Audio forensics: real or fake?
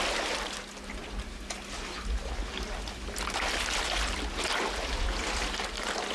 real